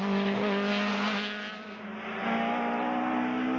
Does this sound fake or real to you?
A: real